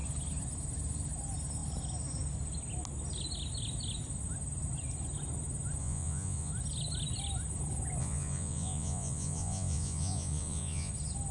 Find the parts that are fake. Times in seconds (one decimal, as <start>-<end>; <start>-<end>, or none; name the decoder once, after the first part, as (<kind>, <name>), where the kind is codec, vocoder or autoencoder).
5.8-6.5 (vocoder, Vocos); 8.0-10.9